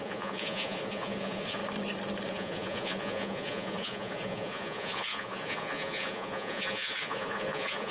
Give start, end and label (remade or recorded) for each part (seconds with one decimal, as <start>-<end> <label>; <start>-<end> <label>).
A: 0.0-1.6 remade; 1.6-2.3 recorded; 2.3-7.9 remade